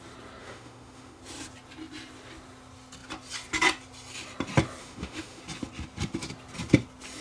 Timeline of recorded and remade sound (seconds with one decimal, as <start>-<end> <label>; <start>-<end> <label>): 0.0-0.4 recorded; 0.4-1.2 remade; 1.2-4.8 recorded; 4.8-5.4 remade; 5.4-7.2 recorded